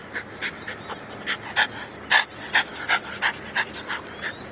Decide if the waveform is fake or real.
real